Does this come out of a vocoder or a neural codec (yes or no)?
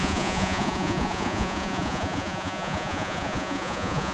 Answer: yes